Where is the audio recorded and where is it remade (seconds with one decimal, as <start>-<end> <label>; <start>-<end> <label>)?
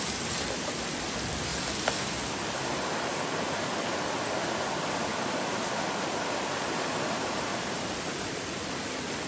0.0-7.5 recorded; 7.5-8.7 remade; 8.7-9.3 recorded